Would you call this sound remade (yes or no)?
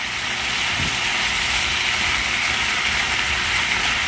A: no